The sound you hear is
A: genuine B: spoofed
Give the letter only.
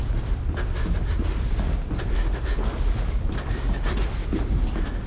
A